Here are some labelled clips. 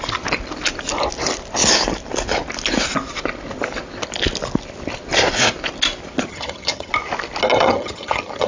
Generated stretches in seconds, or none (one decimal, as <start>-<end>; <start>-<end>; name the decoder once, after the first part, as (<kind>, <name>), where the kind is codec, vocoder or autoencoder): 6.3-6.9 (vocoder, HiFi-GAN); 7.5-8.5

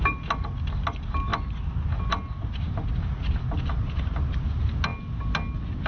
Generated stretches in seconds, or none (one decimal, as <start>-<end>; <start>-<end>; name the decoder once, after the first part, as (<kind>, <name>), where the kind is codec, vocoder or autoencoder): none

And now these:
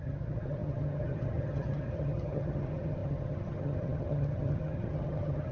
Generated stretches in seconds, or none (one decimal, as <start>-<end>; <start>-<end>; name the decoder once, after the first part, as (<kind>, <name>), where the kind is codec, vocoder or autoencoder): 0.0-5.5 (vocoder, HiFi-GAN)

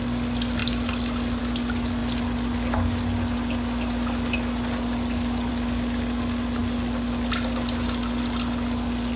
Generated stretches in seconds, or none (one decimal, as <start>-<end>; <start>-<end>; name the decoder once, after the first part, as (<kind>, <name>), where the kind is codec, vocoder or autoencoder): none

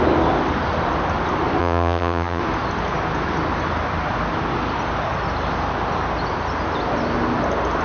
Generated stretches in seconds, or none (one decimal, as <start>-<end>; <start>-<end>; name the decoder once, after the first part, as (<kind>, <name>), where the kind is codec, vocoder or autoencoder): 1.6-2.4 (vocoder, HiFi-GAN)

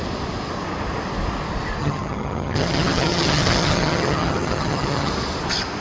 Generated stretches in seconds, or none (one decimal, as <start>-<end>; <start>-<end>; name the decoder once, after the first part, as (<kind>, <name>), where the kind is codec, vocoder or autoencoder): 1.8-5.1 (vocoder, HiFi-GAN)

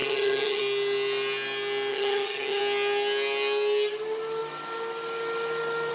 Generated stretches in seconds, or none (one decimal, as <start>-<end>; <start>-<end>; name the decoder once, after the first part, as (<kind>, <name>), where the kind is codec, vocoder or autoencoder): 0.0-0.6 (vocoder, HiFi-GAN); 1.9-2.6